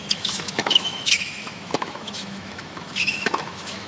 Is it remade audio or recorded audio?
remade